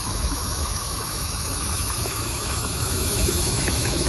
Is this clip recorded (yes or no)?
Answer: no